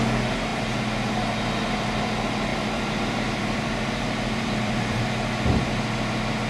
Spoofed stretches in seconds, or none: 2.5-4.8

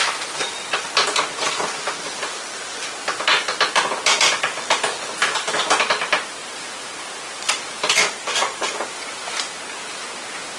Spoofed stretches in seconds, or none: 6.4-7.0; 8.0-8.9